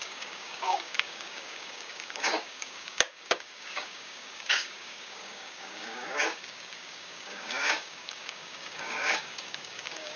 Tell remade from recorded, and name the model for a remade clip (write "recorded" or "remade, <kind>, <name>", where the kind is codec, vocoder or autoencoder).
remade, codec, DAC